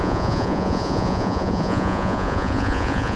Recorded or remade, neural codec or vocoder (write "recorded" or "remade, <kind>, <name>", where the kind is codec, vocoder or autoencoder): remade, vocoder, Vocos